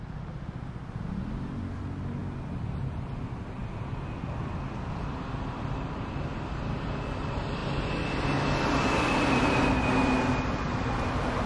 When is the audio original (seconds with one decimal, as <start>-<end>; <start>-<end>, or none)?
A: 0.0-2.2; 2.9-3.6; 7.0-11.5